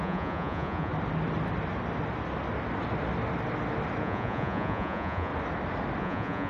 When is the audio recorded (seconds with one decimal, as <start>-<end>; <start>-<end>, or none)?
0.9-4.0; 5.3-6.0